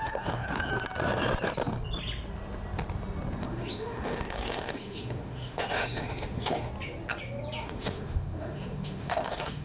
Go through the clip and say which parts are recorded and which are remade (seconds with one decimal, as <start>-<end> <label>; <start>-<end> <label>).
0.0-0.7 remade; 0.7-3.4 recorded; 3.4-6.7 remade; 6.7-7.6 recorded; 7.6-9.6 remade